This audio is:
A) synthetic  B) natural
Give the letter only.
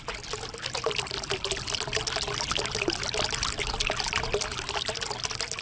B